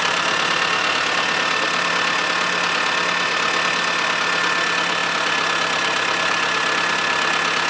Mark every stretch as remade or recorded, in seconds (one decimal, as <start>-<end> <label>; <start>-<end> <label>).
0.0-7.7 recorded